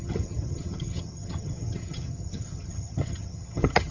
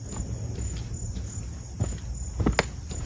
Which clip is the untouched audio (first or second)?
second